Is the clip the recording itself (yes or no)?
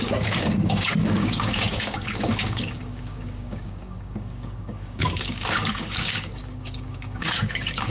no